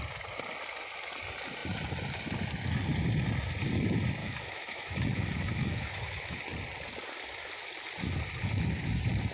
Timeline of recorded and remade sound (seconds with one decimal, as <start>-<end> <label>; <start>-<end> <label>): 0.0-4.2 recorded; 4.2-6.4 remade; 6.4-9.3 recorded